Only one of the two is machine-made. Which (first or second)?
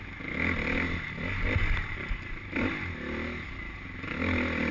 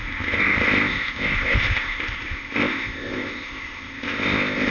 second